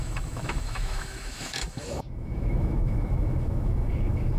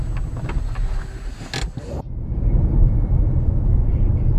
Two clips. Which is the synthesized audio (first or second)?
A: first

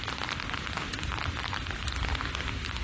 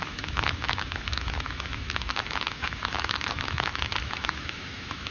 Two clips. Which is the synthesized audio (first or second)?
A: second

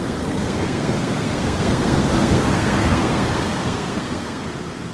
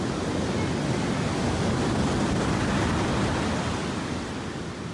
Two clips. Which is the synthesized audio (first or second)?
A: first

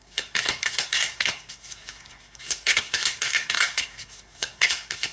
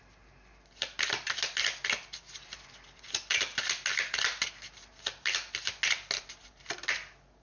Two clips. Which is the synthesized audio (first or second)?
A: first